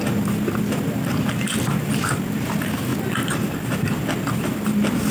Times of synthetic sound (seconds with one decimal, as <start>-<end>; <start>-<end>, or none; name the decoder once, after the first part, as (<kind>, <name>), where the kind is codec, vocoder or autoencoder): none